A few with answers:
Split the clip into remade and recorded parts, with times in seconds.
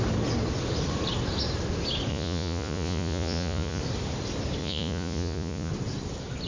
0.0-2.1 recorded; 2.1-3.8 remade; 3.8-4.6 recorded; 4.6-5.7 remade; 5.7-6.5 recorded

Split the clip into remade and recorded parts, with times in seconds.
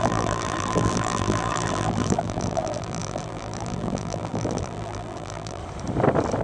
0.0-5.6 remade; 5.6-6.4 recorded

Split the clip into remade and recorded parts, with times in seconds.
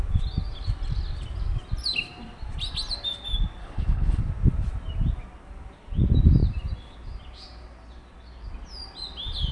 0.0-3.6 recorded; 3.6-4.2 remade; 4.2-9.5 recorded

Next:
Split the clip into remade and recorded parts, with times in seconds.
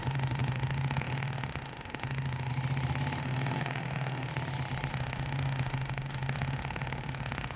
0.0-2.5 remade; 2.5-3.2 recorded; 3.2-4.3 remade; 4.3-4.9 recorded; 4.9-7.6 remade